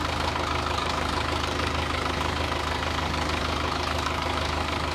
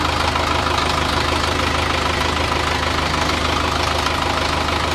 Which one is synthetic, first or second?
first